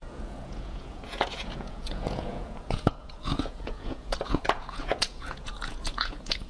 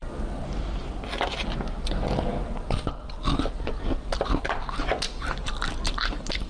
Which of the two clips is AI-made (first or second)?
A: first